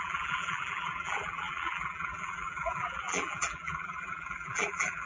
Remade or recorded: remade